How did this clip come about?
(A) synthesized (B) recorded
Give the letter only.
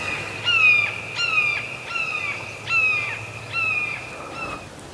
B